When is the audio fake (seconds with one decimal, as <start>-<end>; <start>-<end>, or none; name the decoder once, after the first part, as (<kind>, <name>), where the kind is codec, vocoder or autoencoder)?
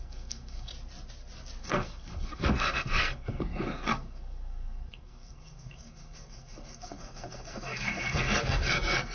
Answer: 0.0-0.7 (codec, SNAC); 1.6-9.1